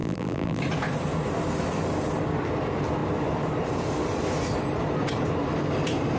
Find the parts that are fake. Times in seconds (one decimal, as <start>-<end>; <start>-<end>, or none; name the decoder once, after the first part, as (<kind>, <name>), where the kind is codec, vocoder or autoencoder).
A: 0.0-0.6 (vocoder, BigVGAN v2)